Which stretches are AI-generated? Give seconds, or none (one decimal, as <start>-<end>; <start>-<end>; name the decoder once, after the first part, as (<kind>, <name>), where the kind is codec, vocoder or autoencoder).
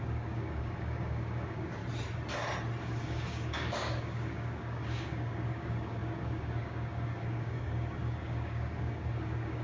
0.0-1.8 (codec, DAC); 2.8-9.6